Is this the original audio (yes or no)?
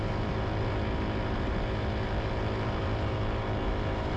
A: yes